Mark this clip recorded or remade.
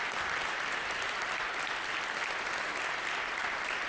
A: recorded